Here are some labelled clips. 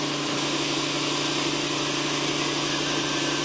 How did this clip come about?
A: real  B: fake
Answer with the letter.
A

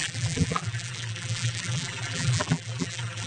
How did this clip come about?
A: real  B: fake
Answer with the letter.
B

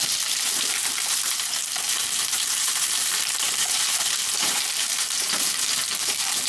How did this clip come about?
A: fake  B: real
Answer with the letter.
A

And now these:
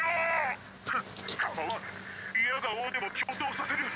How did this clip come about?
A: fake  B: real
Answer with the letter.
B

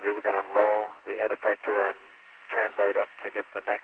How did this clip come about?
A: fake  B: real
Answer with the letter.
A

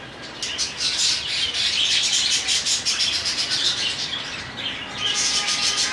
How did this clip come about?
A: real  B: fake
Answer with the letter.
A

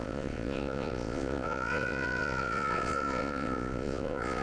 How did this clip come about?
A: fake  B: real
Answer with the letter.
A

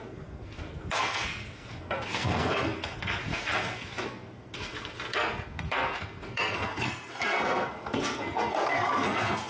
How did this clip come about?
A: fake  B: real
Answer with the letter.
A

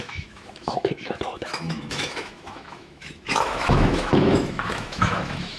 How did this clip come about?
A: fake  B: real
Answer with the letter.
A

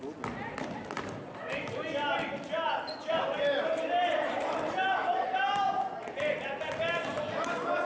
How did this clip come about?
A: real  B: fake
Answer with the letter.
A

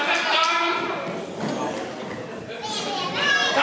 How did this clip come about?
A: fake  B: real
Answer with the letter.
B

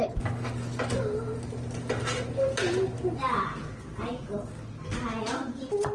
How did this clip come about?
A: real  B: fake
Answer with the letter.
A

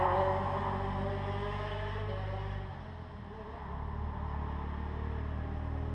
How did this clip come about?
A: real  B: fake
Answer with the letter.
A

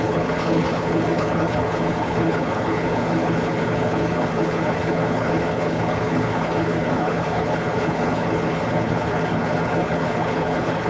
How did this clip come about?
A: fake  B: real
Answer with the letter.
A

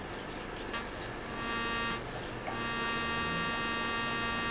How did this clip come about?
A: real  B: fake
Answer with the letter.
A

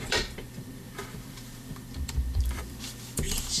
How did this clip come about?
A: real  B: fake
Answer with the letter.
B